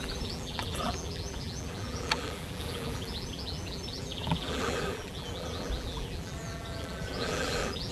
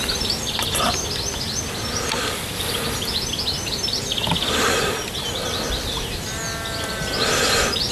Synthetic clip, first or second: first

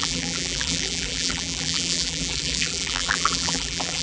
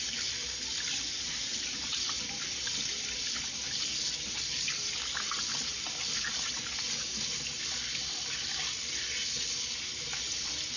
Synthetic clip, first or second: first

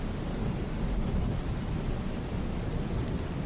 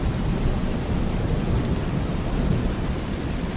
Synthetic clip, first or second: second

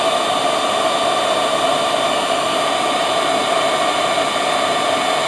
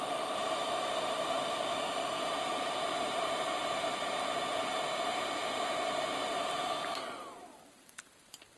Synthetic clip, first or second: second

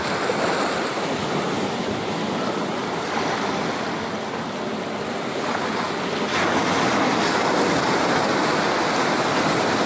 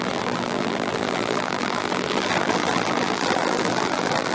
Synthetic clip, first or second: second